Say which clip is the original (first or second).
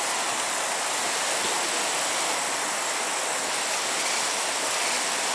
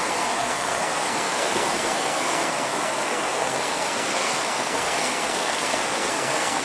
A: first